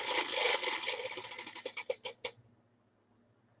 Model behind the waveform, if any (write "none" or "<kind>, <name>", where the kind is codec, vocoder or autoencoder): none